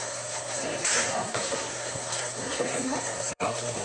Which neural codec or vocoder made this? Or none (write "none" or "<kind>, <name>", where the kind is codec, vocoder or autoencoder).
codec, SNAC